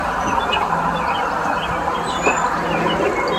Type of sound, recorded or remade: remade